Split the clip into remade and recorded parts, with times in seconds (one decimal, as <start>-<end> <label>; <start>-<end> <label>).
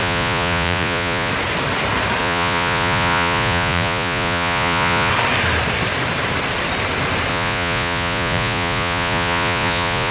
0.0-1.3 remade; 1.3-2.2 recorded; 2.2-5.1 remade; 5.1-7.3 recorded; 7.3-10.1 remade